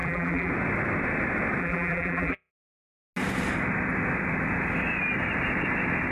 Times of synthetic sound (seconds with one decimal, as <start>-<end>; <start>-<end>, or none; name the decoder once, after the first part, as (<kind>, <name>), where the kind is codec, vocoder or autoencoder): 0.0-0.5 (vocoder, BigVGAN v2); 1.6-2.5